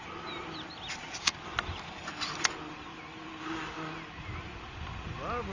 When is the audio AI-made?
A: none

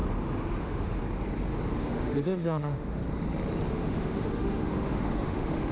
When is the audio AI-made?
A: 0.6-1.0 (autoencoder, DAC-VAE); 1.8-3.0; 3.7-5.7

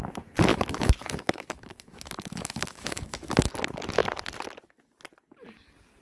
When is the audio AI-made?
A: 0.5-3.5 (autoencoder, DAC-VAE)